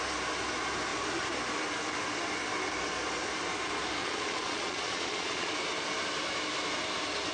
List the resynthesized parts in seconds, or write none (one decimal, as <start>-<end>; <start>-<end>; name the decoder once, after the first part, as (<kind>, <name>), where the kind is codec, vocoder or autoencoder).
4.0-5.5 (vocoder, Vocos)